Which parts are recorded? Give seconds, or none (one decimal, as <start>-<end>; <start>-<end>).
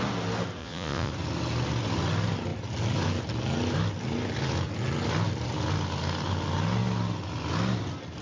0.0-0.6; 1.1-8.2